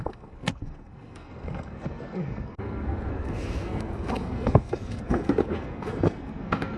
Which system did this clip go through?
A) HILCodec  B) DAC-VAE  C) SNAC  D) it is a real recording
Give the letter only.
C